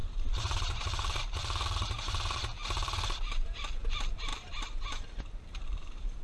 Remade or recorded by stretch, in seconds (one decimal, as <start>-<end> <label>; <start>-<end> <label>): 0.0-2.6 remade; 2.6-3.2 recorded; 3.2-6.2 remade